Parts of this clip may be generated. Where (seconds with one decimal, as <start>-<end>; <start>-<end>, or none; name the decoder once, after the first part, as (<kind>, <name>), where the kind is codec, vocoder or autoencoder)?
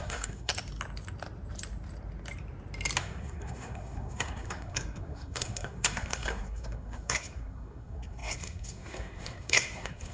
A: 0.0-0.5 (codec, SNAC); 3.0-10.1